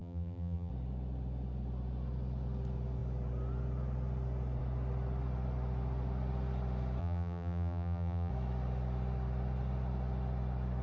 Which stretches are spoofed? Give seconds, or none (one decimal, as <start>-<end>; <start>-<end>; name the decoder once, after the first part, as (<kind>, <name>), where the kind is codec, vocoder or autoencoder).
0.0-0.7 (vocoder, BigVGAN v2); 7.0-8.3